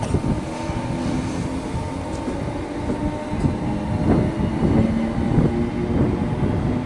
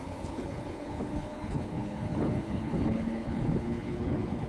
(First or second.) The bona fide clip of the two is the first